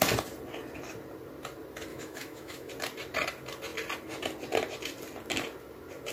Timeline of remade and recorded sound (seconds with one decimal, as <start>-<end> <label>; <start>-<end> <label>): 0.0-1.9 recorded; 1.9-2.7 remade; 2.7-6.1 recorded